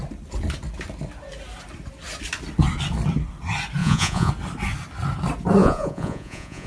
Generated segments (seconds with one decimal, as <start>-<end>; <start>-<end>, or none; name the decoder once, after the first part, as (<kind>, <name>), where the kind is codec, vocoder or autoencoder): 3.8-4.3 (vocoder, Vocos); 5.6-6.7